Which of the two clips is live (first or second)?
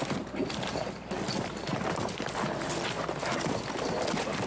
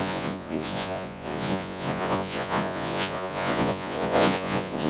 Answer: first